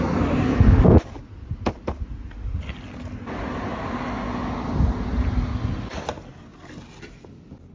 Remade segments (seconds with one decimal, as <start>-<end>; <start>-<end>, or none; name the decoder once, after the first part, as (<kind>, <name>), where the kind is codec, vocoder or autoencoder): 0.5-1.0 (codec, SNAC)